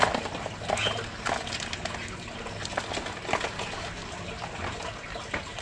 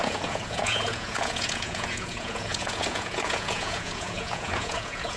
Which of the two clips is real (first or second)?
first